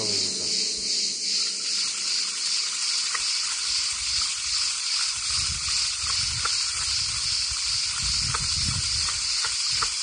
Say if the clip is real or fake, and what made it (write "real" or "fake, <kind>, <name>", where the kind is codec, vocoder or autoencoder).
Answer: real